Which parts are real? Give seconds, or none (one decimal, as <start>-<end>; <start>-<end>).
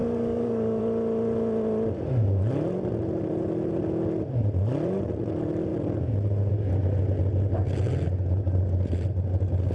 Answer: 0.8-9.7